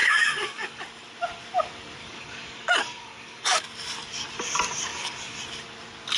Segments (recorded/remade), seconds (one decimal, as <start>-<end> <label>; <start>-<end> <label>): 0.0-0.8 remade; 0.8-2.0 recorded; 2.0-3.6 remade; 3.6-4.9 recorded; 4.9-5.4 remade; 5.4-6.2 recorded